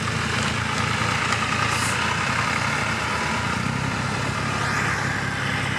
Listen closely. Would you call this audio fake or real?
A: real